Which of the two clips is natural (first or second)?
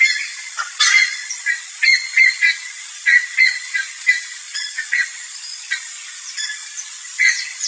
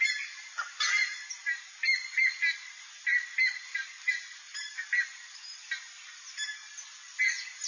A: second